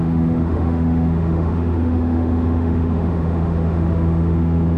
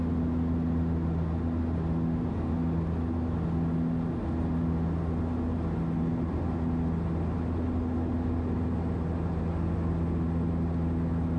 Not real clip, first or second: first